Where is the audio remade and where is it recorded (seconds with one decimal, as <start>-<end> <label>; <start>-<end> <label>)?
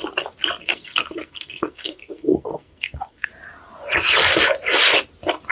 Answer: 0.0-0.6 recorded; 0.6-3.3 remade; 3.3-5.5 recorded